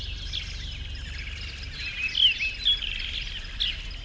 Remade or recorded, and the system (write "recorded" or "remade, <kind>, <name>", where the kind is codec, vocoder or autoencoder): recorded